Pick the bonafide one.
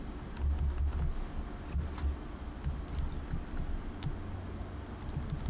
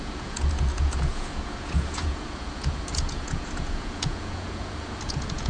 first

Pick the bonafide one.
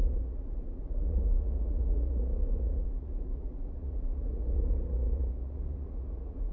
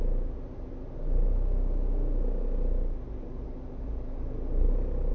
second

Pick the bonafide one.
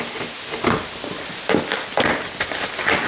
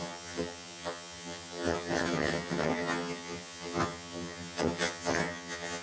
first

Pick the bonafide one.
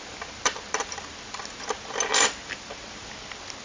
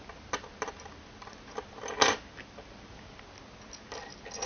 second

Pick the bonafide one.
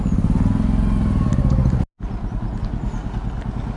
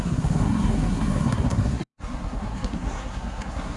first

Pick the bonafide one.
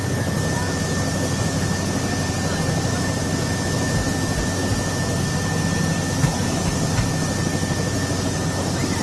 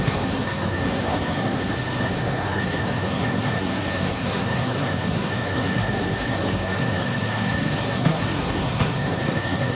first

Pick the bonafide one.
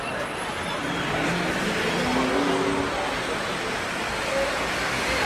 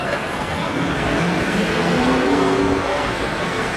first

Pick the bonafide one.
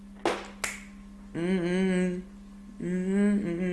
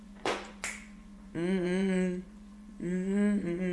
first